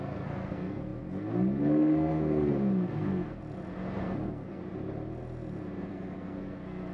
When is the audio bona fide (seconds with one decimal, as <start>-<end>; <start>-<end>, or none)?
3.4-4.0; 4.6-5.9